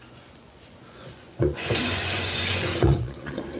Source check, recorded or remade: remade